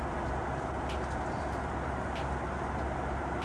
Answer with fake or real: real